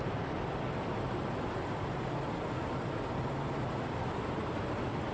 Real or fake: real